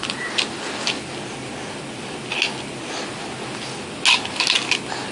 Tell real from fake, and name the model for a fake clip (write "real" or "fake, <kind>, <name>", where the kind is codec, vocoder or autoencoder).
real